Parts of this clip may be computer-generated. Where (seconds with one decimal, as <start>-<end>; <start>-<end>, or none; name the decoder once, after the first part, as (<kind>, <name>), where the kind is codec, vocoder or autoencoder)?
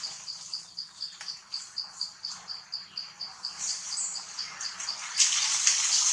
none